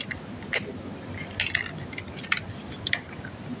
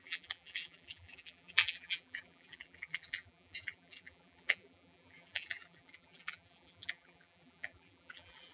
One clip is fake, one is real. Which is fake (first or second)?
second